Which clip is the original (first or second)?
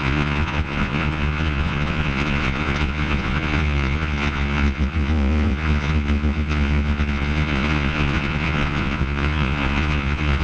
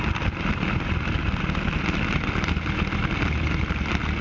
second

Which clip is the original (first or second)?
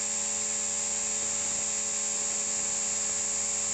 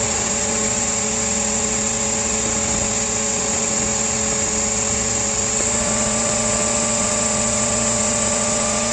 first